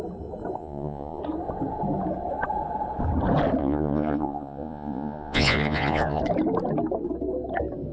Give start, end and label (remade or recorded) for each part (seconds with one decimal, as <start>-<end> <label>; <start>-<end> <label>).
0.0-0.6 recorded; 0.6-1.2 remade; 1.2-3.6 recorded; 3.6-6.2 remade; 6.2-7.9 recorded